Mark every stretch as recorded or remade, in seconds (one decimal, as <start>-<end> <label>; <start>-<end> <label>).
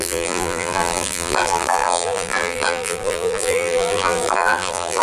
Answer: 0.0-5.0 remade